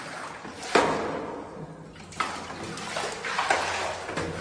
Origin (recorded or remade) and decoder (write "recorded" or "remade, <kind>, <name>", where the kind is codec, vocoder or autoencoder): recorded